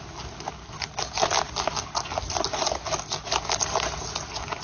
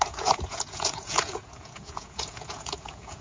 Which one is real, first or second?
first